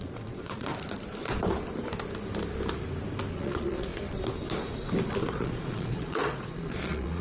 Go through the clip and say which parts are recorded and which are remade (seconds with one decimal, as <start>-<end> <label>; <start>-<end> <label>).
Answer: 0.0-0.7 remade; 0.7-3.3 recorded; 3.3-3.9 remade; 3.9-5.3 recorded; 5.3-7.2 remade